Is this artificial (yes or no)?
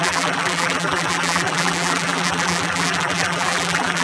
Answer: yes